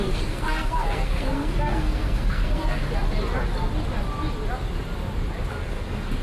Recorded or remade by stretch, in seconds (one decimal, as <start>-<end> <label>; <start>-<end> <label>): 0.0-2.8 remade; 2.8-5.5 recorded; 5.5-6.2 remade